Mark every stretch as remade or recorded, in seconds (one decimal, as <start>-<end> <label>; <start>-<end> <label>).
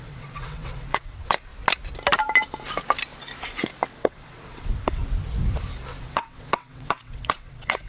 0.0-1.5 remade; 1.5-3.9 recorded; 3.9-5.0 remade; 5.0-6.0 recorded; 6.0-7.9 remade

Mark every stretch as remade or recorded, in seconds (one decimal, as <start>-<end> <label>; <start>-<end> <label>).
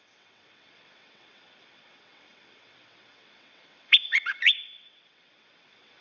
0.0-6.0 remade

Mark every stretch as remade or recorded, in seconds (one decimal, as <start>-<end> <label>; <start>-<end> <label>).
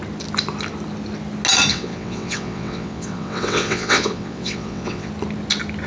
0.0-1.7 recorded; 1.7-5.1 remade; 5.1-5.9 recorded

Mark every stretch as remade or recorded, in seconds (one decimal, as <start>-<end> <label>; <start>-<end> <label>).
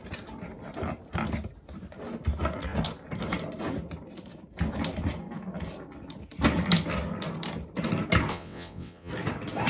0.0-8.3 recorded; 8.3-9.1 remade; 9.1-9.7 recorded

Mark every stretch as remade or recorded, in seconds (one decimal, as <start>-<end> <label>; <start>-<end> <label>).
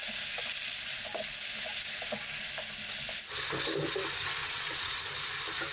0.0-4.4 recorded; 4.4-5.0 remade; 5.0-5.7 recorded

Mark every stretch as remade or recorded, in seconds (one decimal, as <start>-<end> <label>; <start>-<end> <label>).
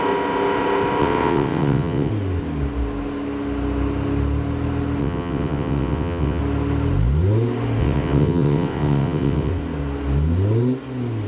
0.0-1.0 recorded; 1.0-2.1 remade; 2.1-5.0 recorded; 5.0-6.4 remade; 6.4-7.8 recorded; 7.8-9.5 remade; 9.5-11.3 recorded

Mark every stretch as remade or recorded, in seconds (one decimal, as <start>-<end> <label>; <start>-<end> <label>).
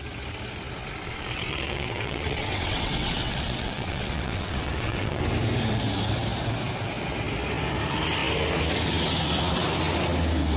0.0-1.0 recorded; 1.0-5.2 remade; 5.2-10.6 recorded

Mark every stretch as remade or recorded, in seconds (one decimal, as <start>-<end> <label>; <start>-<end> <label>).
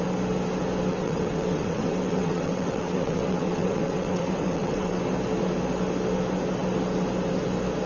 0.0-0.9 recorded; 0.9-5.0 remade; 5.0-7.9 recorded